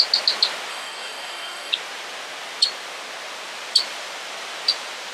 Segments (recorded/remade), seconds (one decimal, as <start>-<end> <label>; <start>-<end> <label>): 0.0-0.7 recorded; 0.7-1.7 remade; 1.7-5.1 recorded